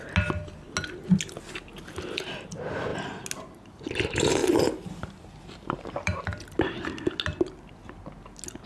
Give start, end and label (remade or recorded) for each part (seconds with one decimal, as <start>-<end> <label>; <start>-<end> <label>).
0.0-4.4 recorded; 4.4-6.4 remade; 6.4-8.7 recorded